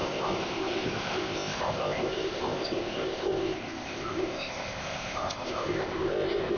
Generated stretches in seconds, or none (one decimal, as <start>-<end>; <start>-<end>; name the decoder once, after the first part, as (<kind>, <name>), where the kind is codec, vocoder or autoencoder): 0.0-6.6 (codec, ZipCodec)